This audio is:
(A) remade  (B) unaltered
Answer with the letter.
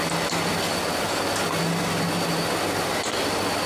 B